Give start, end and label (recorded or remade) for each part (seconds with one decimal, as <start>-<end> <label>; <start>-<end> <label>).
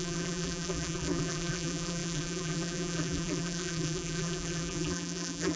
0.0-5.6 remade